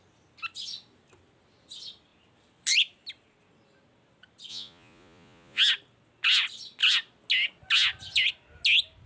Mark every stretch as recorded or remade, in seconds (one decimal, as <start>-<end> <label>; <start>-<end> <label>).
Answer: 0.0-4.5 recorded; 4.5-5.6 remade; 5.6-9.1 recorded